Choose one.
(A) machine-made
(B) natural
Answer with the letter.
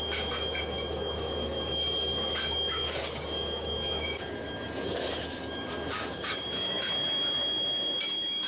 A